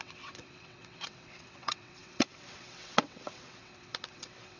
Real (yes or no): no